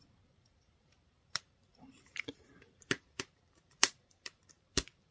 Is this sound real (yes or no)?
no